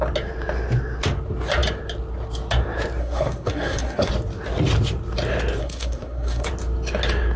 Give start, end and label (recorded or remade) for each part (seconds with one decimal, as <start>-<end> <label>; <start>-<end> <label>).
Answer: 0.0-3.0 recorded; 3.0-4.1 remade; 4.1-5.6 recorded; 5.6-6.5 remade; 6.5-7.4 recorded